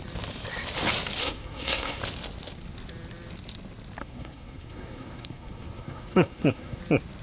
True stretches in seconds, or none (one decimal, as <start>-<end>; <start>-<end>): 0.0-1.2; 2.0-4.0; 6.8-7.2